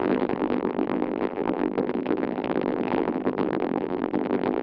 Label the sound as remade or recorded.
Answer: remade